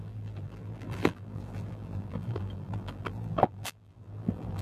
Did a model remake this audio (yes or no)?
yes